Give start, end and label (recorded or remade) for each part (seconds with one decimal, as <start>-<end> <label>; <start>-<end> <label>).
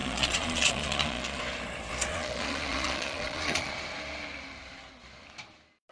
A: 0.0-1.4 remade; 1.4-2.1 recorded; 2.1-3.7 remade; 3.7-5.9 recorded